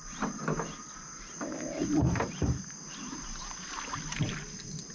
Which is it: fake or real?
real